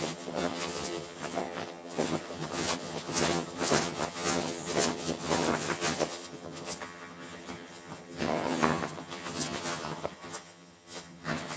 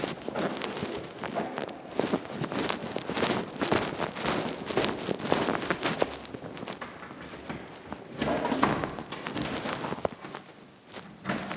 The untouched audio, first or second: second